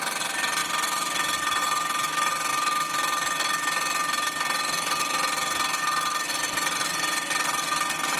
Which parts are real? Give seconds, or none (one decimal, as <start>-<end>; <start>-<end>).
2.5-6.3